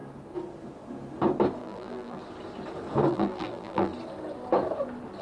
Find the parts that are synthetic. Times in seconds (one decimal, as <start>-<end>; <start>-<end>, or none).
1.6-2.2; 3.1-3.9